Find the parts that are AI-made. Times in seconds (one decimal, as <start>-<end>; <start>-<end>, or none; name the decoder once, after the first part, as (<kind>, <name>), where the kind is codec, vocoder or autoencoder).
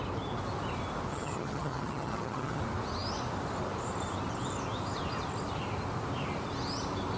1.1-2.6 (vocoder, HiFi-GAN)